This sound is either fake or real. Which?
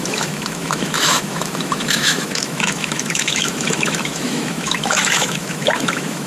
fake